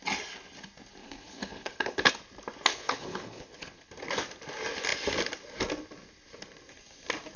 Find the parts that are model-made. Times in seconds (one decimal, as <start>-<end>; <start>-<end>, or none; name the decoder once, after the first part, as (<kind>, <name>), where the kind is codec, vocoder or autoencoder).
1.0-2.1 (codec, HILCodec); 2.7-3.9